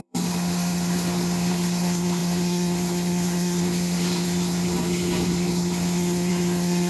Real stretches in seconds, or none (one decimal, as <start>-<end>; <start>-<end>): none